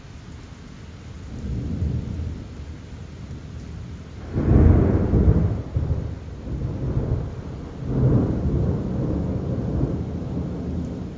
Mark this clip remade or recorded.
recorded